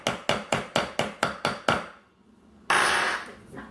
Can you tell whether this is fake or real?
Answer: real